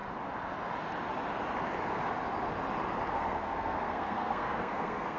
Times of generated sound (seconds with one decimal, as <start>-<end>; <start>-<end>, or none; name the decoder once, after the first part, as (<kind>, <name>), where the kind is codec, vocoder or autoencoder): 3.1-5.2 (codec, SNAC)